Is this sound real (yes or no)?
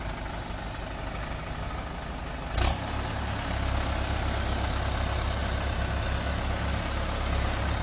yes